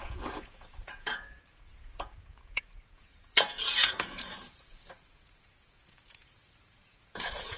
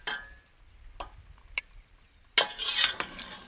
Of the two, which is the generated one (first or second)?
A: first